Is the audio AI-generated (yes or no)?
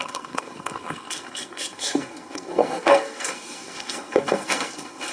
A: yes